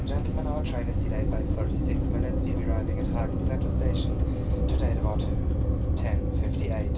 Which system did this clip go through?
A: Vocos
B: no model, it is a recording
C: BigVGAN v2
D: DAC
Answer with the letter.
B